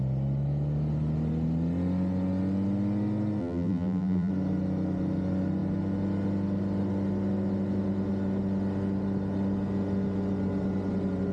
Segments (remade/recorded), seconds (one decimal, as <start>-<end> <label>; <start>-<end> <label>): 0.0-3.4 recorded; 3.4-4.3 remade; 4.3-11.3 recorded